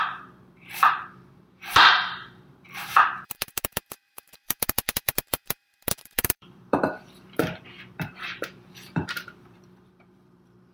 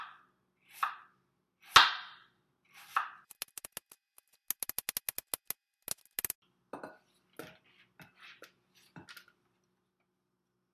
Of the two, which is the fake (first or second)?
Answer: first